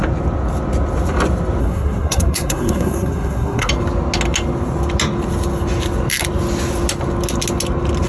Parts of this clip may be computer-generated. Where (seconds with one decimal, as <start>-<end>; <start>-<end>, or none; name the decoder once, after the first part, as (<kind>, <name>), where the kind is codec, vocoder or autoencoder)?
1.6-3.7 (codec, SNAC)